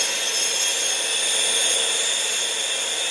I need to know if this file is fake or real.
real